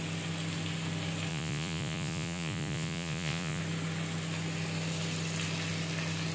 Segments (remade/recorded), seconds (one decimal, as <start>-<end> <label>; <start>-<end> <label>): 0.0-1.3 recorded; 1.3-3.6 remade; 3.6-6.3 recorded